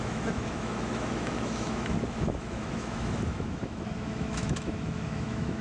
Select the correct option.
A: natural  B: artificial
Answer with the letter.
B